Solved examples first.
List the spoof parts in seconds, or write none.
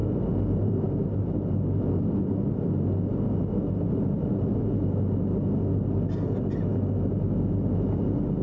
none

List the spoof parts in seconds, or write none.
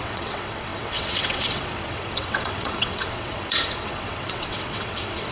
0.0-5.3 (vocoder, WaveNeXt)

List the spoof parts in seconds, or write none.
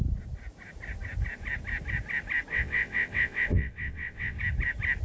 2.5-4.4 (vocoder, WaveNeXt)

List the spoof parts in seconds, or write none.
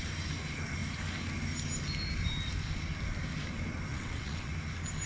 3.9-4.5 (vocoder, WaveNeXt)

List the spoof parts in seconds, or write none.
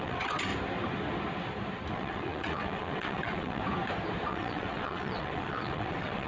0.0-0.5 (vocoder, WaveNeXt); 1.9-3.6; 4.3-6.3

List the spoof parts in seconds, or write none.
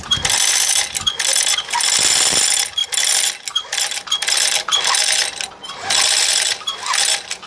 none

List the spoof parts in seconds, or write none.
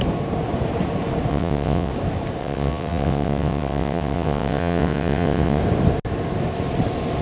1.3-1.9 (vocoder, WaveNeXt); 2.4-5.6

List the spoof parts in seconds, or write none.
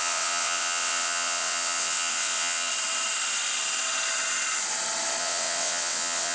0.0-2.7 (vocoder, WaveNeXt); 5.2-6.3